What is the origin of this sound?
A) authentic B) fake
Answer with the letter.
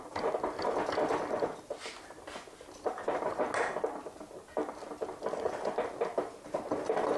A